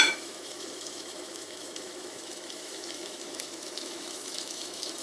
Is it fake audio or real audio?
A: fake